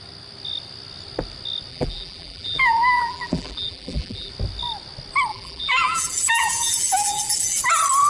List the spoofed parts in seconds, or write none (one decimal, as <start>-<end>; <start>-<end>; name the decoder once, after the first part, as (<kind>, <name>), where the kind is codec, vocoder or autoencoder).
1.7-4.3 (vocoder, BigVGAN v2); 5.3-7.6